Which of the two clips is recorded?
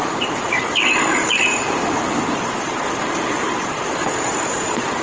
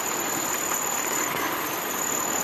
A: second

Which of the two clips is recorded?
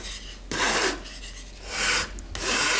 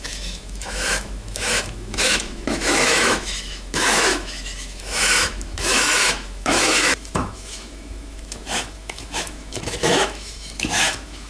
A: first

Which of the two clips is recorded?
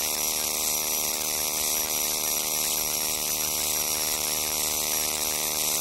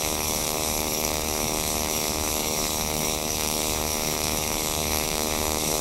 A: first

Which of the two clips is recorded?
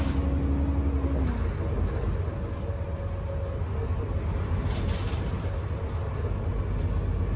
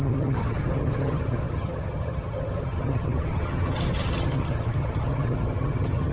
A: first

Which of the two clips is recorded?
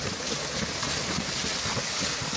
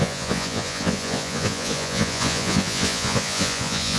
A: first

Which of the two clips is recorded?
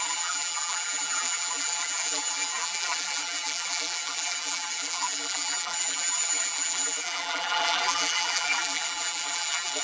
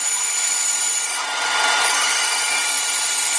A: second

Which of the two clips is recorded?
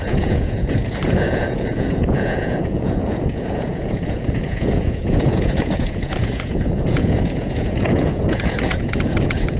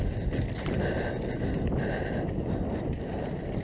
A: second